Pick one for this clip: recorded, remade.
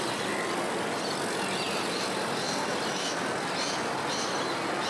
recorded